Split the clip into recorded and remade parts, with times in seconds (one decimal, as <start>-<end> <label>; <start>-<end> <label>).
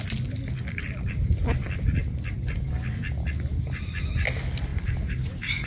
0.0-2.0 recorded; 2.0-2.7 remade; 2.7-4.7 recorded; 4.7-5.7 remade